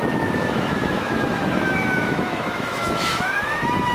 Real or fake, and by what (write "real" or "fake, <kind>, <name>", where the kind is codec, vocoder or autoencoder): fake, autoencoder, DAC-VAE